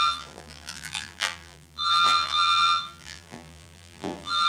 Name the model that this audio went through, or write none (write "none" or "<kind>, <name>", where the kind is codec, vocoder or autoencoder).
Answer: vocoder, BigVGAN v2